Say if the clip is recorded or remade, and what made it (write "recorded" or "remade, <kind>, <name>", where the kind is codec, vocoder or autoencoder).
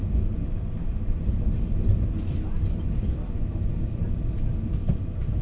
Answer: recorded